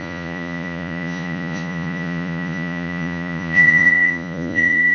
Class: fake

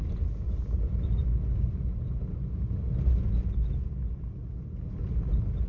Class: real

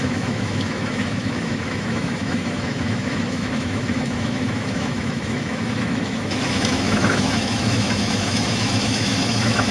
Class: fake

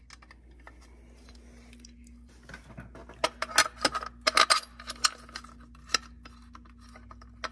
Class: real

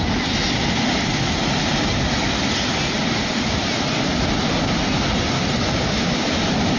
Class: real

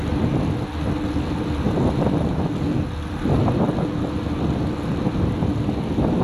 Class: real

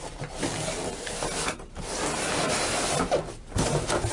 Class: real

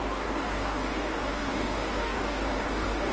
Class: fake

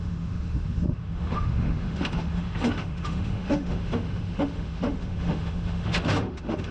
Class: fake